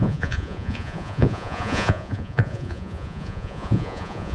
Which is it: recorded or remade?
remade